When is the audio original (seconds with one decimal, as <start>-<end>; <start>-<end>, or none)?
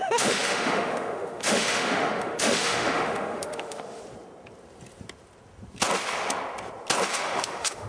4.0-7.1